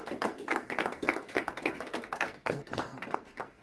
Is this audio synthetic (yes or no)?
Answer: yes